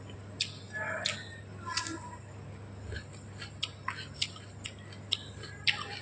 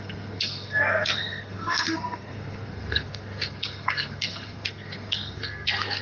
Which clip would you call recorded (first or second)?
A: first